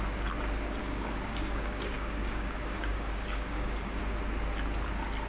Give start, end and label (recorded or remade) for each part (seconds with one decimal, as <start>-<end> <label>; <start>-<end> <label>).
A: 0.0-0.8 recorded; 0.8-4.0 remade; 4.0-5.3 recorded